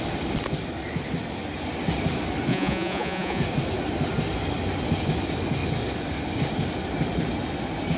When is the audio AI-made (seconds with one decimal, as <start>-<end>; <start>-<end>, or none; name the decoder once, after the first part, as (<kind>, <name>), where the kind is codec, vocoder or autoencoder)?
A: 2.5-3.4 (vocoder, Vocos)